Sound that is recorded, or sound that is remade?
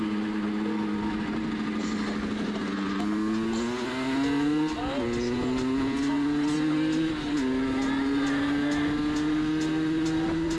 recorded